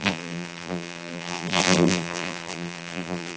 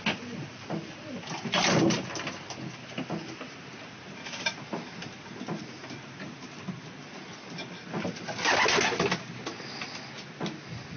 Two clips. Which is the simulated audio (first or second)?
first